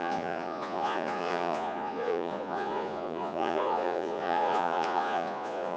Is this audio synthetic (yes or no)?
yes